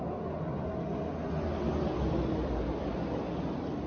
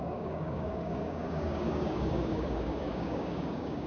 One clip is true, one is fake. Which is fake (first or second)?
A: second